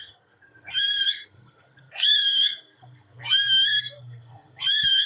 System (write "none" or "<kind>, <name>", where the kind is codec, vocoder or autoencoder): codec, SNAC